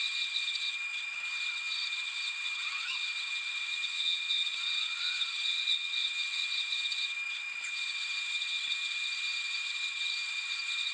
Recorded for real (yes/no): no